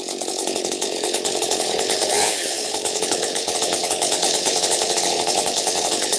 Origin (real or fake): fake